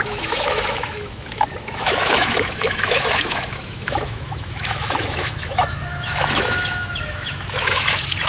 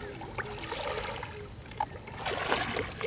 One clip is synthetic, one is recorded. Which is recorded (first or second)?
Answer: second